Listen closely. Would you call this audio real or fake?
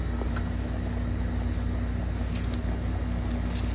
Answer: real